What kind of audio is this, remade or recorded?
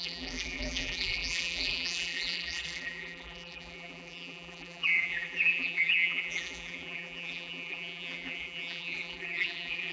remade